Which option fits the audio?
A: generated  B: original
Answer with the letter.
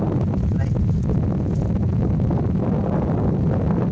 B